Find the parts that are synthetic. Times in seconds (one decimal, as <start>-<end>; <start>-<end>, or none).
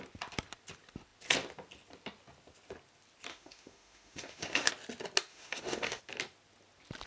3.3-4.7; 5.3-6.0